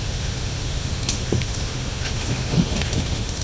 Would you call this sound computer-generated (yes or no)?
yes